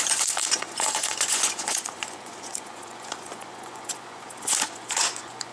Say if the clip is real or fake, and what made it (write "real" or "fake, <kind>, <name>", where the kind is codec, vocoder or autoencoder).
fake, vocoder, Vocos